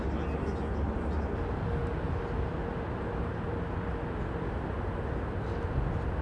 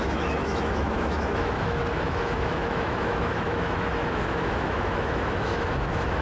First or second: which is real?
first